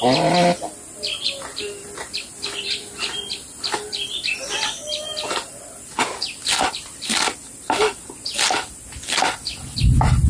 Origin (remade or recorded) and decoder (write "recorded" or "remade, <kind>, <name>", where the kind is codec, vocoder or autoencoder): recorded